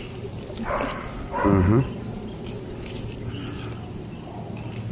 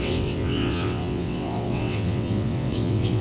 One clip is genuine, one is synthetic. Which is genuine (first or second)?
first